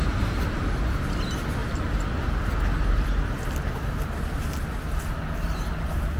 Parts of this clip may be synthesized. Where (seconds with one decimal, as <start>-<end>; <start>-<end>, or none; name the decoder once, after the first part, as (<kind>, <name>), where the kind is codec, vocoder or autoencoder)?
none